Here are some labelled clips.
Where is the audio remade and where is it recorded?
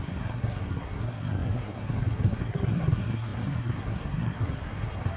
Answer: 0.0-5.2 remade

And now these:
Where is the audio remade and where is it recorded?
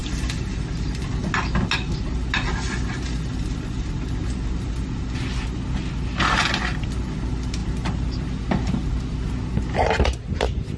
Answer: 0.0-10.8 recorded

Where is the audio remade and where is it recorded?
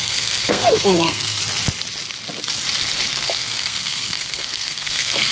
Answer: 0.0-1.4 remade; 1.4-3.1 recorded; 3.1-5.3 remade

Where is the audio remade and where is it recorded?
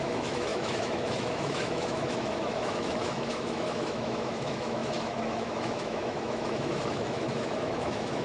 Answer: 0.0-8.2 remade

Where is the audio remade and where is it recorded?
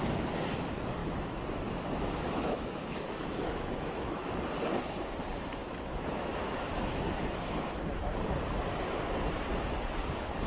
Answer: 0.0-1.0 recorded; 1.0-4.4 remade; 4.4-5.6 recorded; 5.6-7.8 remade; 7.8-10.5 recorded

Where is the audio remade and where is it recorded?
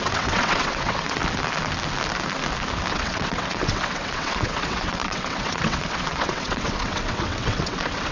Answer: 0.0-1.2 remade; 1.2-2.9 recorded; 2.9-8.1 remade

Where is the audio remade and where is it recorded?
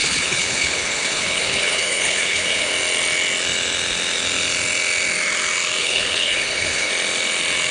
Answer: 0.0-2.7 remade; 2.7-5.8 recorded; 5.8-6.9 remade; 6.9-7.7 recorded